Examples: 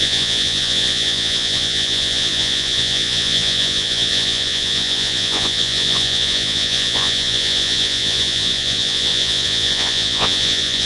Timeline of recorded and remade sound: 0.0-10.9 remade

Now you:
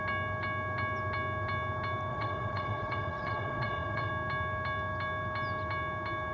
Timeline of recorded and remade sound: 0.0-2.1 recorded; 2.1-4.1 remade; 4.1-6.3 recorded

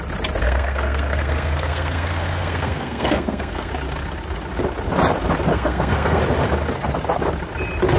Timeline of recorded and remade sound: 0.0-0.4 recorded; 0.4-3.7 remade; 3.7-5.5 recorded; 5.5-6.2 remade; 6.2-8.0 recorded

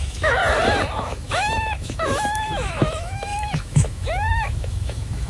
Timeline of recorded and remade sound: 0.0-0.4 remade; 0.4-1.0 recorded; 1.0-5.3 remade